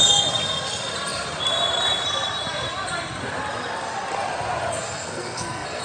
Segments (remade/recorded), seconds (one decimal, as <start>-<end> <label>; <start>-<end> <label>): 0.0-4.7 recorded; 4.7-5.8 remade